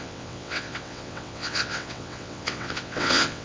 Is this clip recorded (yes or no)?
no